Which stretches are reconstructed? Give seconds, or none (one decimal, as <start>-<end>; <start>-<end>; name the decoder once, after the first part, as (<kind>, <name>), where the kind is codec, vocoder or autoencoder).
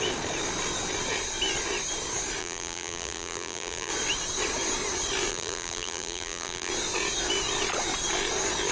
2.4-3.9 (vocoder, BigVGAN v2); 5.3-6.7